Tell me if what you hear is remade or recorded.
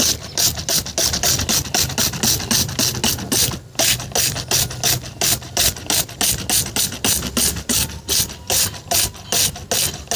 recorded